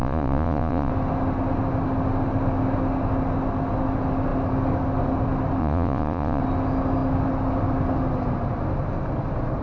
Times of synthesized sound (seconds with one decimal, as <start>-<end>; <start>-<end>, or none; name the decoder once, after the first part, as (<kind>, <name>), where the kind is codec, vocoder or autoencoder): 0.0-0.9 (vocoder, Vocos); 5.6-6.4